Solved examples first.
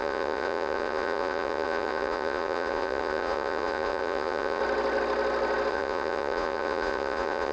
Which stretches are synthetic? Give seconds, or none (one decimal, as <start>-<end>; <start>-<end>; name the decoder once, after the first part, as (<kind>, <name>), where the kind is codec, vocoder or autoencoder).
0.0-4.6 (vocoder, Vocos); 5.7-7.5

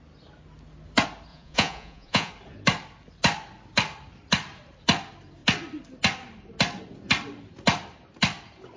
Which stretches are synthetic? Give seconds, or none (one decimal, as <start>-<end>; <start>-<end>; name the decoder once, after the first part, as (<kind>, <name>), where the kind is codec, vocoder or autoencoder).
1.3-2.3 (vocoder, Vocos)

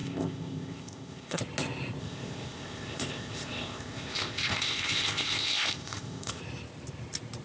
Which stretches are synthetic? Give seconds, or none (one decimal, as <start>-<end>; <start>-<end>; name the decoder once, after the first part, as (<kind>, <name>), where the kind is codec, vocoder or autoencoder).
0.0-1.4 (codec, ZipCodec); 2.0-6.4

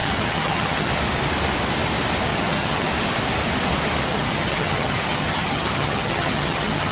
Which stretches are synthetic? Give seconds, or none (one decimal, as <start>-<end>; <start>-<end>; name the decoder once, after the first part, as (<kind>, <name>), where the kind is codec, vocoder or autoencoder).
0.0-0.9 (vocoder, HiFi-GAN); 2.3-2.9; 4.1-6.9

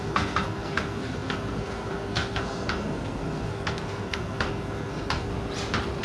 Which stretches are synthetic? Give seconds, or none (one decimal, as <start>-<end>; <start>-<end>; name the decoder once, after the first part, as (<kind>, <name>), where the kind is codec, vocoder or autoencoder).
0.0-5.3 (codec, SNAC)

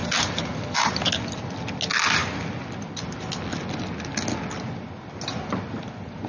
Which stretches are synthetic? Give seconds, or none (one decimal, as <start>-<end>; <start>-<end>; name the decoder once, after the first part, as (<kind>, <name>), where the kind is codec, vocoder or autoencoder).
0.0-1.1 (vocoder, BigVGAN v2)

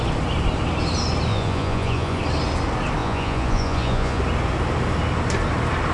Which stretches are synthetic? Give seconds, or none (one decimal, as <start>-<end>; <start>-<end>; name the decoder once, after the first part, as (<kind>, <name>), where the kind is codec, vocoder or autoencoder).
1.3-2.2 (vocoder, Vocos); 3.0-4.2

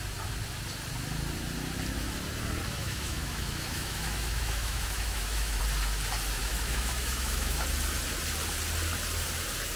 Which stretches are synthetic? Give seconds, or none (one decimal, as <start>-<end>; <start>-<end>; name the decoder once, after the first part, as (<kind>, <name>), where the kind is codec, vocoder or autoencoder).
2.8-5.6 (autoencoder, DAC-VAE); 6.4-7.6